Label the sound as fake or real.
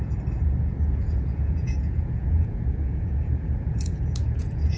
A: fake